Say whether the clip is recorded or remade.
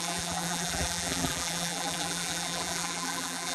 remade